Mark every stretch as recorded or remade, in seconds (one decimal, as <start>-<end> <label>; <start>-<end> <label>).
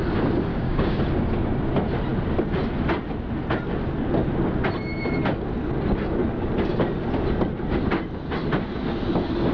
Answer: 0.0-0.5 recorded; 0.5-1.0 remade; 1.0-9.5 recorded